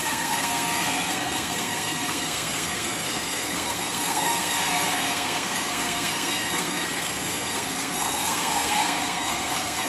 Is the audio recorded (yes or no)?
no